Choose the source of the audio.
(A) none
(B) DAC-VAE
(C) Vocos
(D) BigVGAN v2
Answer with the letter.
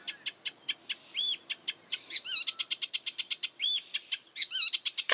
A